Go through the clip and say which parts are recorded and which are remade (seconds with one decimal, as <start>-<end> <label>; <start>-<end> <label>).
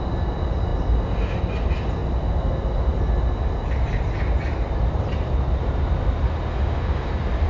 0.0-6.5 recorded; 6.5-7.1 remade; 7.1-7.5 recorded